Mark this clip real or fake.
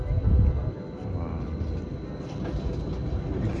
real